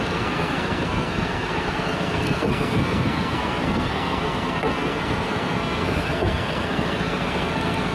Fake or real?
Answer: fake